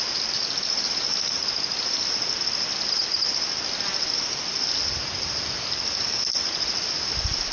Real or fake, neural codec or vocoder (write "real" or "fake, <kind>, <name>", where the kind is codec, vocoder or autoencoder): real